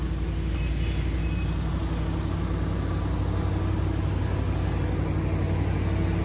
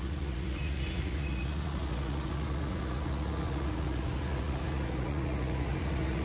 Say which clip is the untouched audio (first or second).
first